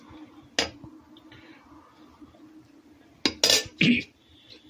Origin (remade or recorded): recorded